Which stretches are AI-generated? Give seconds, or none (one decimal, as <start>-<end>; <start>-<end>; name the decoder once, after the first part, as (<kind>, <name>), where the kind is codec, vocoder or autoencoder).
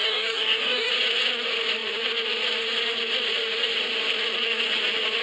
0.0-0.9 (codec, DAC)